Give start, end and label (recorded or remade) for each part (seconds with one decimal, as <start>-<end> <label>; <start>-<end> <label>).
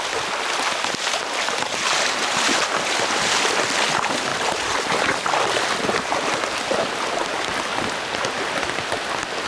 0.0-9.5 recorded